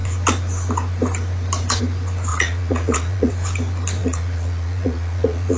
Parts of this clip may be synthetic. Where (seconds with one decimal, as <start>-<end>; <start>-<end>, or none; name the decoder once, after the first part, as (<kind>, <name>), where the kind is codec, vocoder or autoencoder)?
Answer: 2.3-3.3 (vocoder, Vocos); 4.0-5.6